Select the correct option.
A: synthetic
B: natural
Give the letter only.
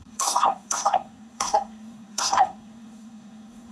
A